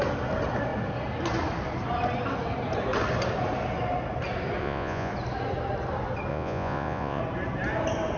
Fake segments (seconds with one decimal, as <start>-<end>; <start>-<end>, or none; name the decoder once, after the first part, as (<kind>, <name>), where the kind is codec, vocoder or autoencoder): 4.6-5.1 (vocoder, Vocos); 6.3-7.2